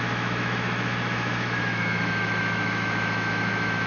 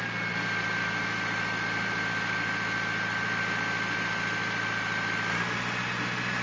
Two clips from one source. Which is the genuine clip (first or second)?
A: second